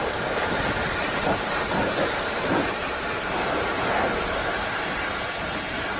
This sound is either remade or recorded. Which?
remade